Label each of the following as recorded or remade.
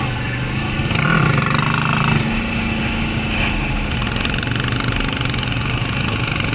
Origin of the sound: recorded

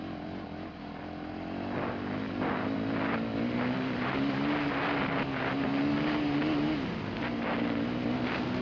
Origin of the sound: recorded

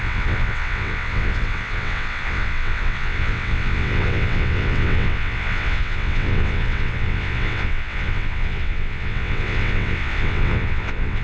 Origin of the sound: remade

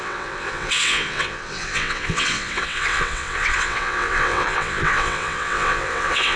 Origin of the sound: remade